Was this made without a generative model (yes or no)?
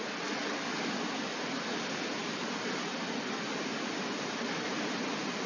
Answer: yes